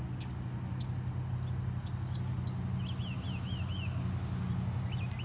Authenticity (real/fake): real